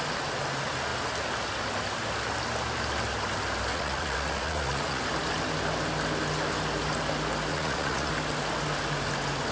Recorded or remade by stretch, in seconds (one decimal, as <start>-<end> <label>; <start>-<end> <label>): 0.0-3.7 recorded; 3.7-5.0 remade; 5.0-7.5 recorded; 7.5-8.1 remade; 8.1-9.5 recorded